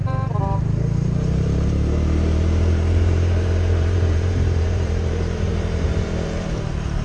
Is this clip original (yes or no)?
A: no